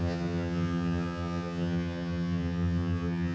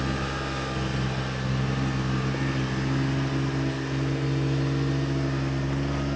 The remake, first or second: first